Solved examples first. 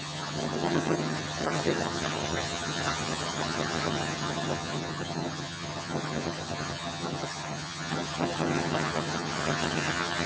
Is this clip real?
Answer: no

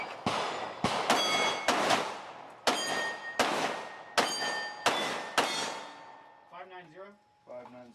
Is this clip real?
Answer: yes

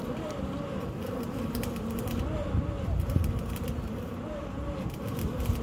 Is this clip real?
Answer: no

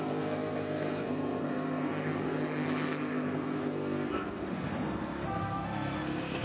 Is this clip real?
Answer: no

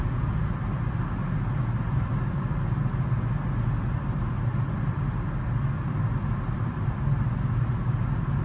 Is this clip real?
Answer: yes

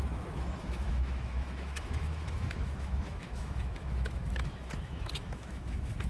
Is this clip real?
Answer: no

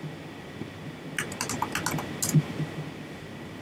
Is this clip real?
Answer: yes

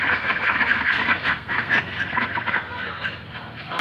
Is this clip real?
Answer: no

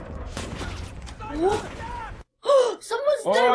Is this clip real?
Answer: no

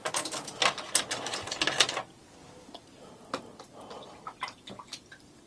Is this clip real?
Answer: yes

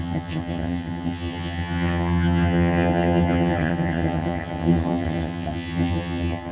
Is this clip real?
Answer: no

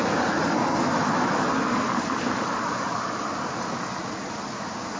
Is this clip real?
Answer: yes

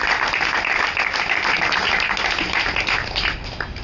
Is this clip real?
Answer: yes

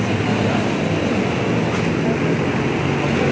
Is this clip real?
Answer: yes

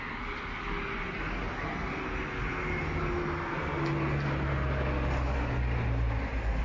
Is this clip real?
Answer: yes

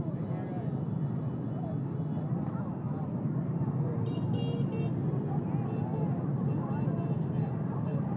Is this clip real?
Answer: yes